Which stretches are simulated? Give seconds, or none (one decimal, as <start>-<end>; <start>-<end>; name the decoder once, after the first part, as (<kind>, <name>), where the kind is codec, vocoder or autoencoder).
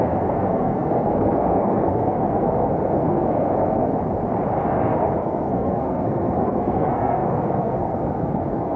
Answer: 0.0-3.9 (codec, SNAC); 4.6-8.8